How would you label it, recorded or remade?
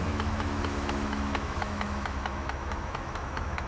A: remade